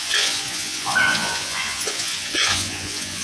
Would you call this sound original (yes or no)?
no